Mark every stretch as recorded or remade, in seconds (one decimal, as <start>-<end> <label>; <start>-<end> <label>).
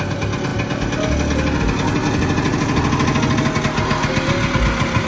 0.0-5.1 recorded